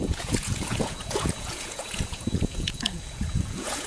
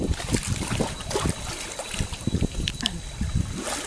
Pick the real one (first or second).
second